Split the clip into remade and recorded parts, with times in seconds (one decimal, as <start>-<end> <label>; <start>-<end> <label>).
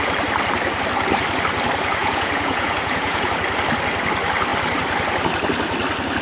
0.0-2.0 recorded; 2.0-3.3 remade; 3.3-6.2 recorded